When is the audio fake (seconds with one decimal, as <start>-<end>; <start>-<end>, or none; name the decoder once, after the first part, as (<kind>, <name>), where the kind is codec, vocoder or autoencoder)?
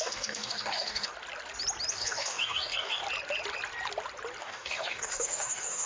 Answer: 0.0-1.1 (codec, DAC); 1.9-3.0; 4.4-5.9